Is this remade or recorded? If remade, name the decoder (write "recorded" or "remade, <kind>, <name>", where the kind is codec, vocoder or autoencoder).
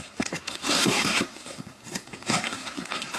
remade, codec, SNAC